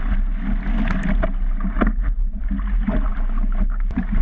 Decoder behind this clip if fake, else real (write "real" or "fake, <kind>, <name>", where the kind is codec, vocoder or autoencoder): real